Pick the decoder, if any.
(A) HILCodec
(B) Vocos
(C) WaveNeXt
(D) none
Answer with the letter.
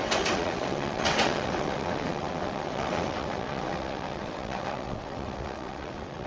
C